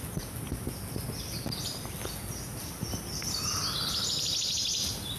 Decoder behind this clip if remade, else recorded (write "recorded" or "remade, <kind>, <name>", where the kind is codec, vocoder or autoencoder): recorded